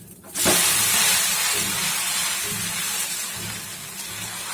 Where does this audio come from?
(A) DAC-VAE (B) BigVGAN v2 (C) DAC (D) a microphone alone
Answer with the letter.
D